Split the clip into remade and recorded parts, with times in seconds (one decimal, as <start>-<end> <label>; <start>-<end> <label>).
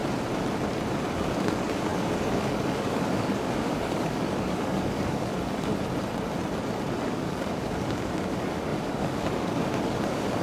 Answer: 0.0-1.1 recorded; 1.1-5.7 remade; 5.7-7.0 recorded; 7.0-10.4 remade